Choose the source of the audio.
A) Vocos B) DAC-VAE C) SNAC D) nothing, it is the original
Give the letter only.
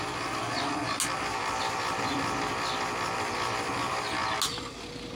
D